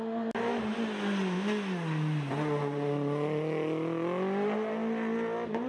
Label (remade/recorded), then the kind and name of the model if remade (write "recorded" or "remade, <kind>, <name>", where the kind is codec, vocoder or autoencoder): recorded